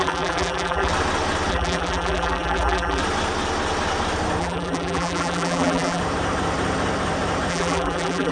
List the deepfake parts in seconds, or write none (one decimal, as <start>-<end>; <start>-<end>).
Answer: 0.0-0.9; 1.5-3.0; 4.4-6.0; 7.5-8.3